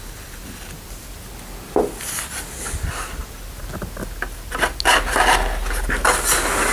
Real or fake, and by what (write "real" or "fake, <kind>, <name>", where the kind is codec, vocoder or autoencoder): real